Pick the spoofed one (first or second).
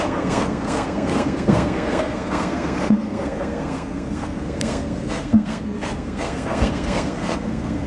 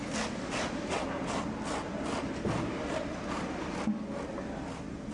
first